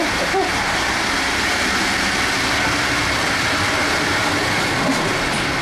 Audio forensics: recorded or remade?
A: recorded